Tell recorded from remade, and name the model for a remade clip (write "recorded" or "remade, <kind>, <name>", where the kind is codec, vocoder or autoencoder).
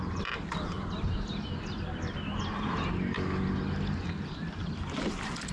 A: recorded